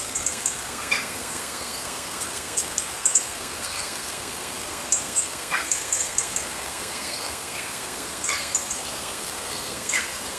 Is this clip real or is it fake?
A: fake